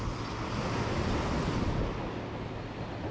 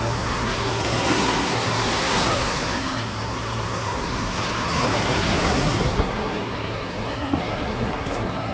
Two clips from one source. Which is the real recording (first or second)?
first